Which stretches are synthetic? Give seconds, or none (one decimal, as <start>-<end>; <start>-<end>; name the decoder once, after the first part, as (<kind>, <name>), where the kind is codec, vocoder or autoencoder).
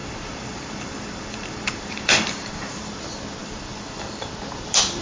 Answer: 0.0-3.0 (vocoder, BigVGAN v2); 3.4-4.3